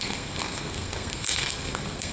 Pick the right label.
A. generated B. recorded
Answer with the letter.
A